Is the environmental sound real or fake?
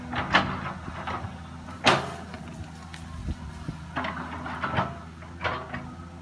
real